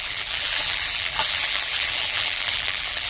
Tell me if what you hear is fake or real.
fake